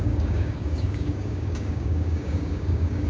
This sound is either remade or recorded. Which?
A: remade